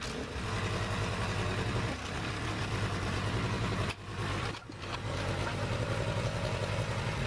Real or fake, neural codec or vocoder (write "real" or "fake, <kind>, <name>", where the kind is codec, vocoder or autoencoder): real